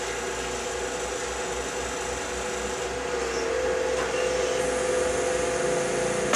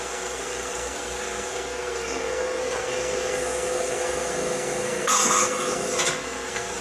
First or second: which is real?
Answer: first